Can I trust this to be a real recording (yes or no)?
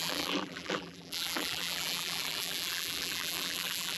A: no